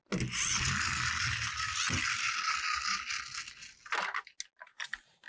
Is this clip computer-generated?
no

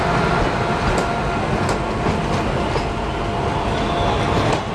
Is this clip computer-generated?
no